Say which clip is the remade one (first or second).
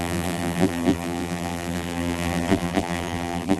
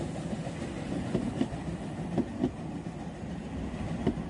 first